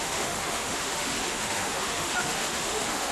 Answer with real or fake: fake